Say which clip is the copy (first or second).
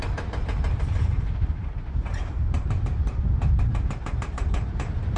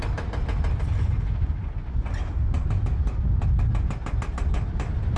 first